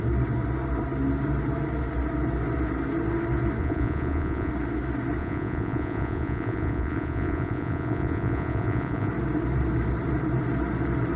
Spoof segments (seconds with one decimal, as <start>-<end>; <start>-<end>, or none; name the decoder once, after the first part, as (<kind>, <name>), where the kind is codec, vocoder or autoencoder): 3.6-4.5 (vocoder, Vocos); 5.2-9.1